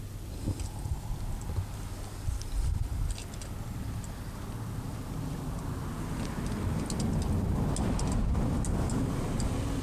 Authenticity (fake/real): real